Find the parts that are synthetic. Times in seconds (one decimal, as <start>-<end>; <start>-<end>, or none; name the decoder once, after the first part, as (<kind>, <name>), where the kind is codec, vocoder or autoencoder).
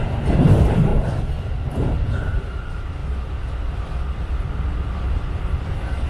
none